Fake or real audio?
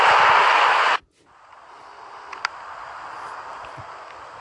real